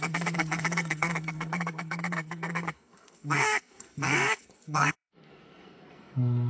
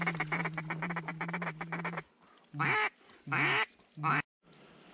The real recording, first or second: second